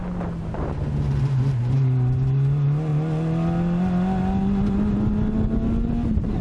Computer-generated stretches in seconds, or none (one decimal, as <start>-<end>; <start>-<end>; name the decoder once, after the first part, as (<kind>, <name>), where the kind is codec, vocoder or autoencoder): none